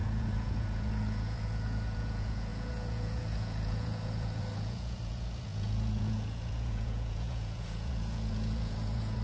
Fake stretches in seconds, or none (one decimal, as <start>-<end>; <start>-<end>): 0.0-9.2